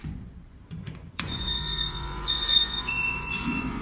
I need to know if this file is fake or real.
fake